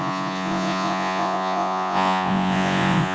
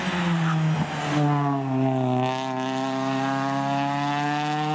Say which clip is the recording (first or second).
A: second